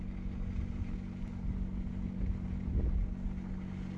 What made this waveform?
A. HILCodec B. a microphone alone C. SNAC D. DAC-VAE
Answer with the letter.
B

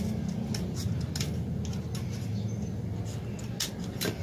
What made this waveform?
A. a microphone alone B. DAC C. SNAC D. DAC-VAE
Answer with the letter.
A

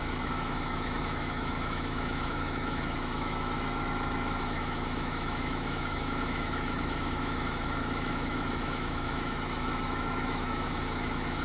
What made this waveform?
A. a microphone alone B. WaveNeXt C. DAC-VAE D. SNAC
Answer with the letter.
C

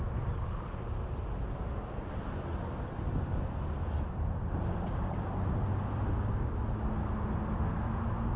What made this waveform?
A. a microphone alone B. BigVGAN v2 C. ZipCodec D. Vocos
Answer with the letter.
A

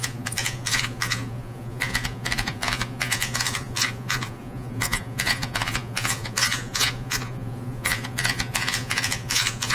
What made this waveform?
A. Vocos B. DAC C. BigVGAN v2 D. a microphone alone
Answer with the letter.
A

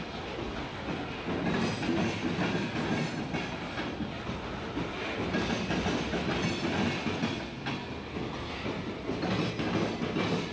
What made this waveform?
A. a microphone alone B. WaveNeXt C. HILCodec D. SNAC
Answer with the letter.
A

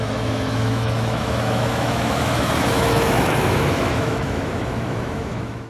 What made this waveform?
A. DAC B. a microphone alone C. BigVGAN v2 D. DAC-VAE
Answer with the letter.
D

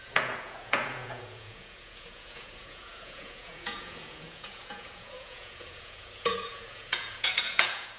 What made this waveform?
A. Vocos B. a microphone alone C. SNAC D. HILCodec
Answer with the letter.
A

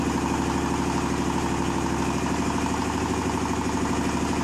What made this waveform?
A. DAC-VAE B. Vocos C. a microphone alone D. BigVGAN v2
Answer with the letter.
C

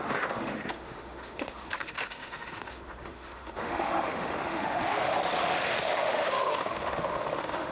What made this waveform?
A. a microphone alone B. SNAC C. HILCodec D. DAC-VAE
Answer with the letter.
D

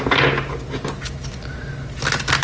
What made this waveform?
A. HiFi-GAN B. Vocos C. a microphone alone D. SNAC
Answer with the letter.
C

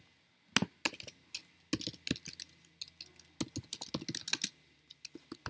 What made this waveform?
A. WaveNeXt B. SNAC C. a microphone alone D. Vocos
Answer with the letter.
C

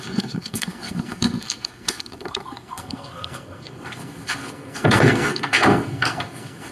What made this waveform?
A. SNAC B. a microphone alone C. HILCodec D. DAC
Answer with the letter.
A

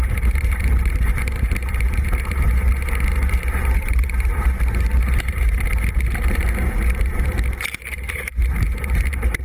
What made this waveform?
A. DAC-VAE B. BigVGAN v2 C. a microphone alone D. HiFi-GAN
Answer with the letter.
B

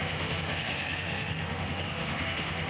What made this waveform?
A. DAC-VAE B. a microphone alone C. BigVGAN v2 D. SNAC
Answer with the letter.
A